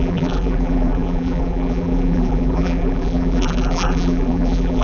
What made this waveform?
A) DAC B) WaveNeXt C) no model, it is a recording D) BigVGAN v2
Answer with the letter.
D